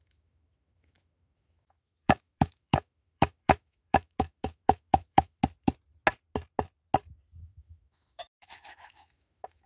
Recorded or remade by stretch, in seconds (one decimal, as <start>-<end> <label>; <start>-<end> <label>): 0.0-5.4 remade; 5.4-7.4 recorded; 7.4-9.7 remade